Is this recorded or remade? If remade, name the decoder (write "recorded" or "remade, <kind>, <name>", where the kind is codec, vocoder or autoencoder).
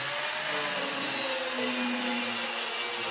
recorded